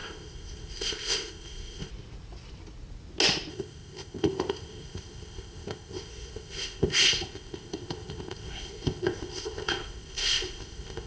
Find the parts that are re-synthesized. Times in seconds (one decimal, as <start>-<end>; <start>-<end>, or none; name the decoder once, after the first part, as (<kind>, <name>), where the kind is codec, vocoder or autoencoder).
0.0-1.9 (codec, ZipCodec); 3.5-11.1